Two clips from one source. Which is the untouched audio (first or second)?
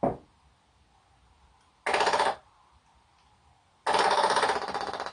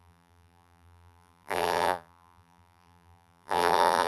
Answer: first